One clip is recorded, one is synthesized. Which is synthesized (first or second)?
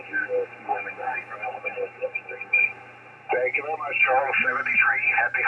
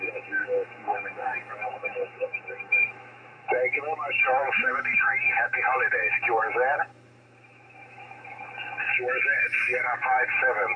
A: second